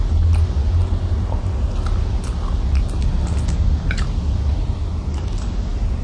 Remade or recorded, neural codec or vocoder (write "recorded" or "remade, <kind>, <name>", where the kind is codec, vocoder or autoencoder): recorded